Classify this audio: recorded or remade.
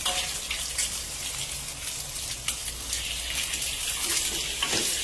recorded